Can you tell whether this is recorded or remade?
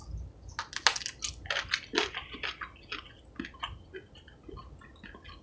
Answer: recorded